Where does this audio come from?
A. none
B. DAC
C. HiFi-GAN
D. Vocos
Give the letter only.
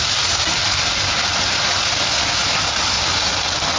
A